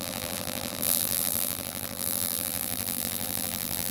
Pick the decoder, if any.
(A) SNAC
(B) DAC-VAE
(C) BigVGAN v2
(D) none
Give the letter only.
C